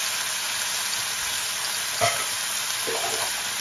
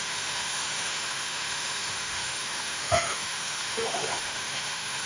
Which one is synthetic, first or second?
second